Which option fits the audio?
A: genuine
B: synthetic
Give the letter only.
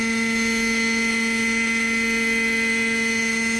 A